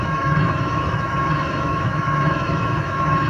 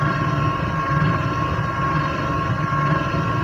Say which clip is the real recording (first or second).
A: second